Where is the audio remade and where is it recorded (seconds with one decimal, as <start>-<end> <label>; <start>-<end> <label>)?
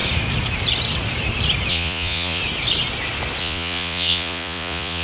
0.0-1.7 recorded; 1.7-2.4 remade; 2.4-3.4 recorded; 3.4-5.0 remade